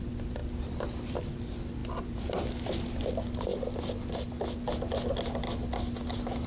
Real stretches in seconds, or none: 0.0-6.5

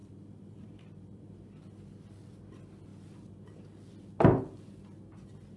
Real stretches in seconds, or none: 1.3-5.6

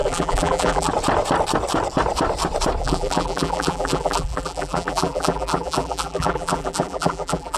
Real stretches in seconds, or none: 0.9-2.8

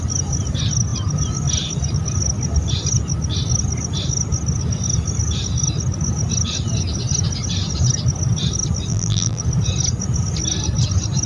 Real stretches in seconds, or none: 0.0-8.9; 9.4-11.3

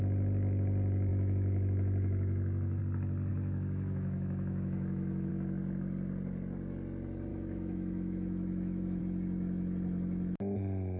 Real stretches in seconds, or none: 0.0-1.1; 2.8-3.3; 5.3-7.3; 9.0-11.0

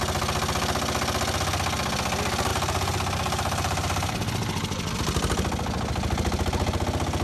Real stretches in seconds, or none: 0.0-2.5; 4.1-7.2

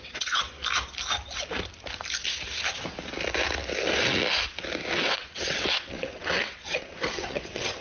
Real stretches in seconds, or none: 0.6-4.9

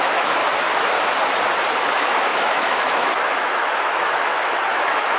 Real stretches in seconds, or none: 0.4-1.9